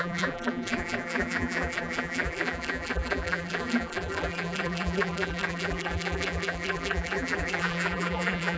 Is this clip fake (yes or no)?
yes